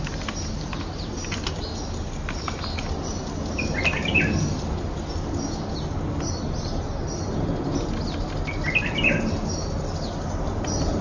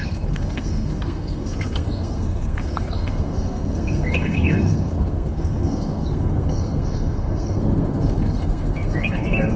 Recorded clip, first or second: first